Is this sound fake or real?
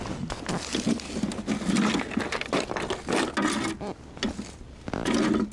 real